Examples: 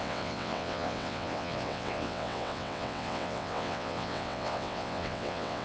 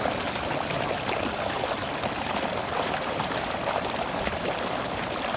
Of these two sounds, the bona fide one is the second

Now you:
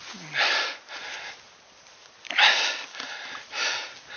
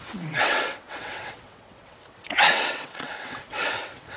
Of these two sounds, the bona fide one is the first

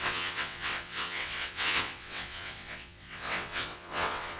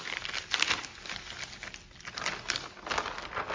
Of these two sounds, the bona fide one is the second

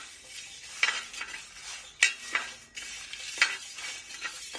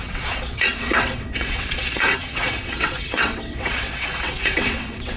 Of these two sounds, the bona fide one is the first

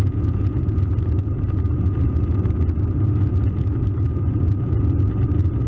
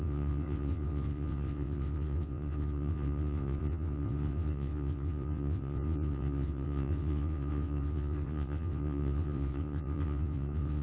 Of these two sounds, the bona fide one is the first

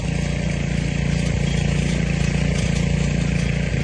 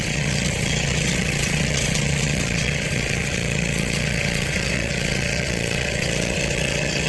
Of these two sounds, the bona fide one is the first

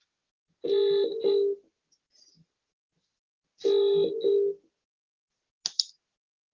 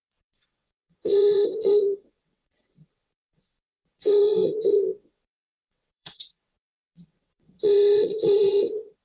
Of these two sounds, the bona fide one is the first